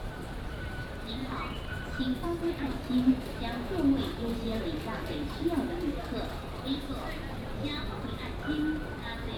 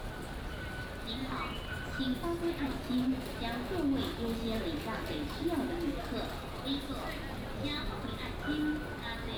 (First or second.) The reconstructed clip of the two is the first